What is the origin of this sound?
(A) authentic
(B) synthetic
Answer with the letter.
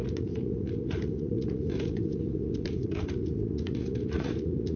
B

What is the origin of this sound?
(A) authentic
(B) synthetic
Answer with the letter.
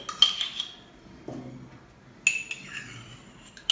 A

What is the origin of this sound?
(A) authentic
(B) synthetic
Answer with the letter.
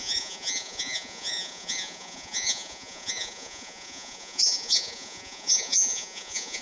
B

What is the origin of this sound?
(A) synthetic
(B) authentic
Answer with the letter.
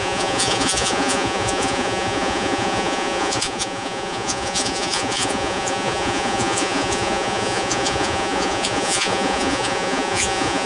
A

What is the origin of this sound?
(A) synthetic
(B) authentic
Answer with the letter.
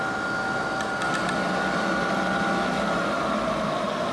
B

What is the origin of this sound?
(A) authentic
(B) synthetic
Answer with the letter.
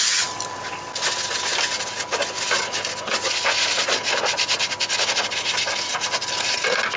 A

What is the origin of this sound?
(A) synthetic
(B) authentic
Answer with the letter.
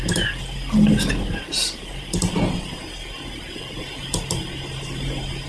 B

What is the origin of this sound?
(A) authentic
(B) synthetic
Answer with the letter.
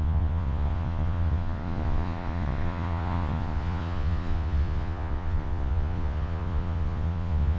B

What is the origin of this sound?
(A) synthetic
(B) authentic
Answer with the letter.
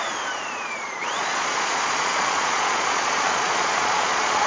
A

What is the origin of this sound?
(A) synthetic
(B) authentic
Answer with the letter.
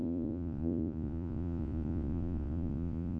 A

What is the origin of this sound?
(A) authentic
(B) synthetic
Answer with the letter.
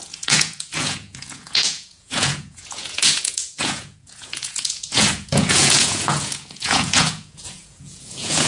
B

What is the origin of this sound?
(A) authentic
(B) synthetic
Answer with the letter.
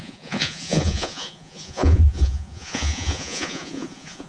B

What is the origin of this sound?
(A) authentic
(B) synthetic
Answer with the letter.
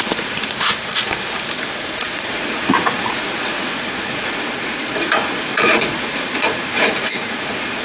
B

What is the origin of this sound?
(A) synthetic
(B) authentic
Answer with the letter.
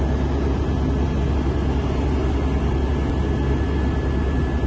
B